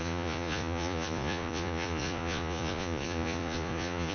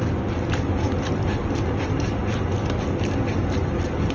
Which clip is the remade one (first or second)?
first